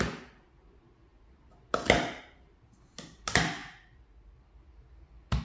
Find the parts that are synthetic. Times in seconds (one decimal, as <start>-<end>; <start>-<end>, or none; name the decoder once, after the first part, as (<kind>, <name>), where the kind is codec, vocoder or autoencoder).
none